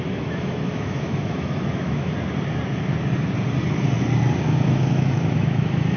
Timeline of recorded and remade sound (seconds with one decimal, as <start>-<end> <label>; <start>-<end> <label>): 0.0-2.1 remade; 2.1-4.4 recorded; 4.4-6.0 remade